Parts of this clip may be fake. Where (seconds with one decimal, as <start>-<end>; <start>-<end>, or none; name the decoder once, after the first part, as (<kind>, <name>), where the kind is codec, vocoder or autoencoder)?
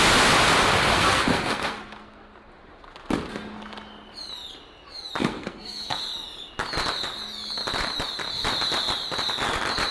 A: 0.9-2.3 (codec, SNAC); 5.2-6.0